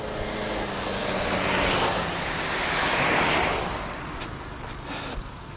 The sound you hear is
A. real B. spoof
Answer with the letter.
A